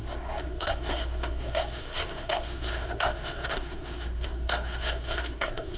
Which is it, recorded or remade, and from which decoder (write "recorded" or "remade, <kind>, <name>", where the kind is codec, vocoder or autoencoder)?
remade, codec, SNAC